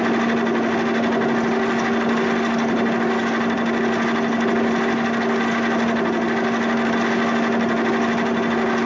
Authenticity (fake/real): real